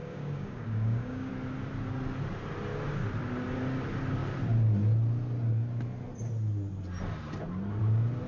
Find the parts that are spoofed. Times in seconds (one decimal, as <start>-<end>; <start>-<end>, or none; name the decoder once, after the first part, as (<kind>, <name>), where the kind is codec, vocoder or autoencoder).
0.0-1.3 (codec, DAC)